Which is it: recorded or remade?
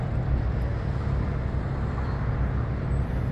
recorded